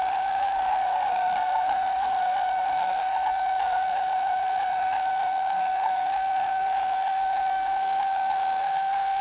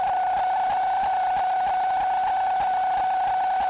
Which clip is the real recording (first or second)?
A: second